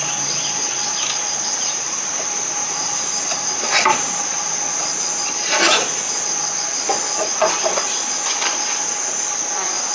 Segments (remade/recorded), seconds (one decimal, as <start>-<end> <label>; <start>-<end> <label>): 0.0-1.5 recorded; 1.5-4.2 remade; 4.2-5.2 recorded; 5.2-6.3 remade; 6.3-7.4 recorded; 7.4-8.1 remade; 8.1-9.9 recorded